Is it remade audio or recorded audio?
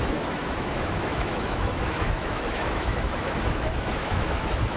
remade